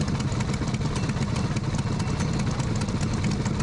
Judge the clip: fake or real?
real